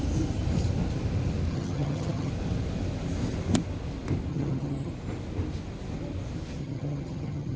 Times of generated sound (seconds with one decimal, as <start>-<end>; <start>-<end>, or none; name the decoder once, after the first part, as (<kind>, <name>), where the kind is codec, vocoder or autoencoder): 1.5-2.3 (vocoder, HiFi-GAN); 4.3-4.9; 6.6-7.6